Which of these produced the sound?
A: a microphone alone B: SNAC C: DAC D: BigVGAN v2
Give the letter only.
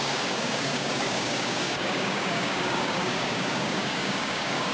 C